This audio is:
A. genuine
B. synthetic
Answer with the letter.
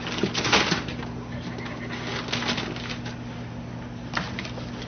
A